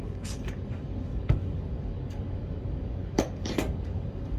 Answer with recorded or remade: remade